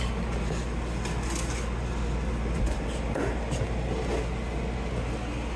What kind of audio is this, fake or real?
real